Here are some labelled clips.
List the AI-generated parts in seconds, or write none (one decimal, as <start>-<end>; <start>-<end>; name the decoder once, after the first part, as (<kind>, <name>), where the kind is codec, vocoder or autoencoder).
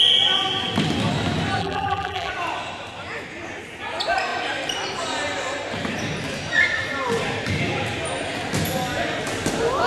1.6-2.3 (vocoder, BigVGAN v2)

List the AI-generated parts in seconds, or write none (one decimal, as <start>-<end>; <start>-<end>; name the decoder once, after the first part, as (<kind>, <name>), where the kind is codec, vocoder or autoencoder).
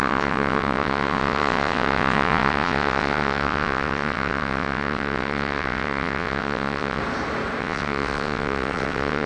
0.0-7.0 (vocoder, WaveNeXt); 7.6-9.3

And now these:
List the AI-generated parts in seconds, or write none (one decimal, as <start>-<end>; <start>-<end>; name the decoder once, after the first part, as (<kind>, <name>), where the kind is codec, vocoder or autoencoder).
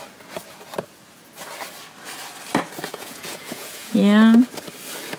2.9-4.0 (vocoder, Vocos)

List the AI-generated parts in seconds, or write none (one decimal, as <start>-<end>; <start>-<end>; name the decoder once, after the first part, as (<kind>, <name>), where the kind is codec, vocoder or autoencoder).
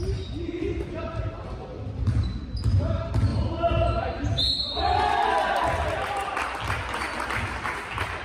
3.3-4.5 (vocoder, BigVGAN v2); 6.4-7.0